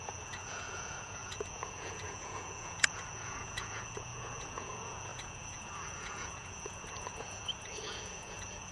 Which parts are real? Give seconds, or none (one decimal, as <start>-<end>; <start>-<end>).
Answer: none